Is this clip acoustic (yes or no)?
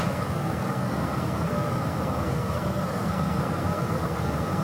no